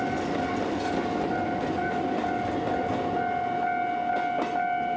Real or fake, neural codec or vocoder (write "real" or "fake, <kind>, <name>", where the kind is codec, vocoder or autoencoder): real